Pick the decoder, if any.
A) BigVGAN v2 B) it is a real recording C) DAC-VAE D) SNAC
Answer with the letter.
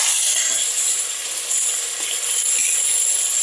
B